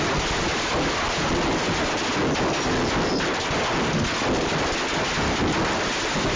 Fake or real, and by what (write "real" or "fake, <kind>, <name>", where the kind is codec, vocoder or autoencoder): real